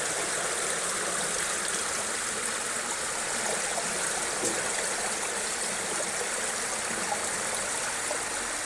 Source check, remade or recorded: recorded